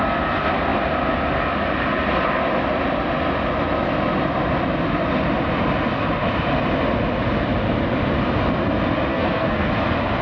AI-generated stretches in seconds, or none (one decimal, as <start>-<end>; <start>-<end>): 9.1-9.7